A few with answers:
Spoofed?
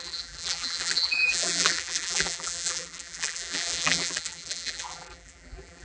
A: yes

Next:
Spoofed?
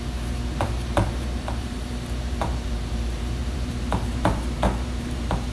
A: yes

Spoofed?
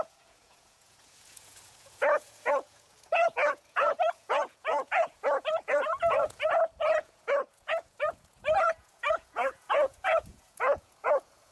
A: yes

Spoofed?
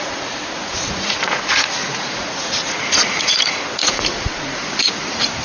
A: yes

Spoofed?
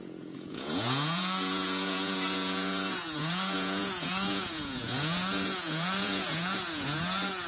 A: yes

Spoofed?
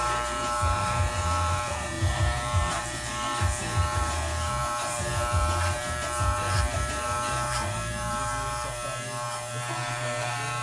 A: yes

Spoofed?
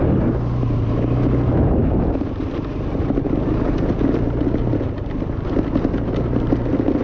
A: no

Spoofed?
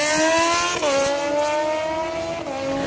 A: no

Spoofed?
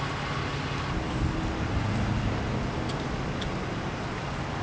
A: no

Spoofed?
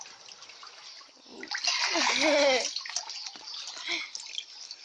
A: no